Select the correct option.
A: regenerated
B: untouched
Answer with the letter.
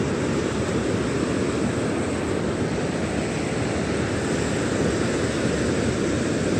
B